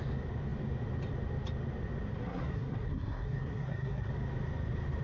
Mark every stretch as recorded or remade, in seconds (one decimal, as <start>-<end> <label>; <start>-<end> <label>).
0.0-2.2 recorded; 2.2-4.1 remade; 4.1-5.0 recorded